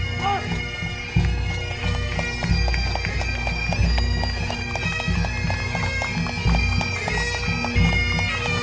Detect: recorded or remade recorded